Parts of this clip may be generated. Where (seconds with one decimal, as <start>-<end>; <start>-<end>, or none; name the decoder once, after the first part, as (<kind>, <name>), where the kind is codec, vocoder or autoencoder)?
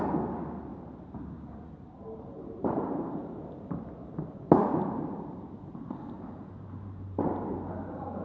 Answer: 0.7-3.4 (vocoder, BigVGAN v2); 4.0-7.3